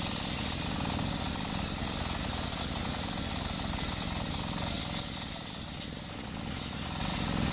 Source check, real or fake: real